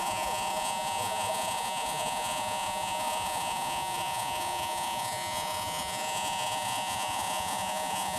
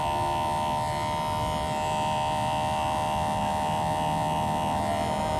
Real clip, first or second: second